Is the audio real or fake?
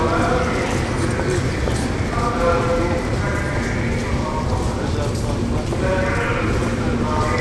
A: real